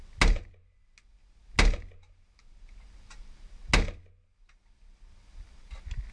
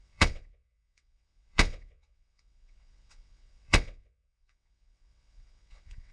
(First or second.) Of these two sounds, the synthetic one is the second